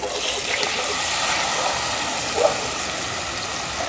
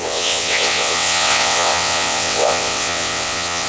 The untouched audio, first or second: first